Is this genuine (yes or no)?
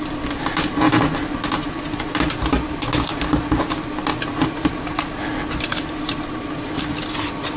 yes